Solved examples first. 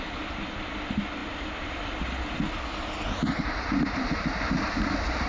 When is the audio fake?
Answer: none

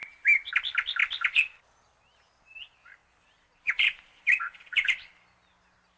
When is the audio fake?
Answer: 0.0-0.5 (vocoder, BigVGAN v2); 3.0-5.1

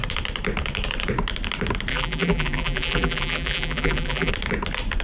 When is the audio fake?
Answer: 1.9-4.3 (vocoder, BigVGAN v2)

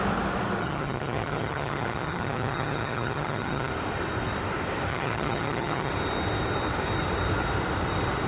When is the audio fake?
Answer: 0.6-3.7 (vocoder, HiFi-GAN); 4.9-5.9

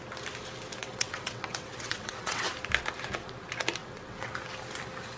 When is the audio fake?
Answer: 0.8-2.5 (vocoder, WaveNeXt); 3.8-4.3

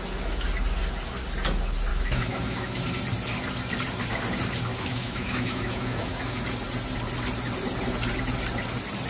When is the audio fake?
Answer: 1.9-2.8 (autoencoder, DAC-VAE); 4.7-6.4